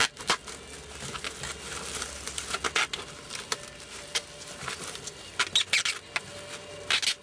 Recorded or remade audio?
recorded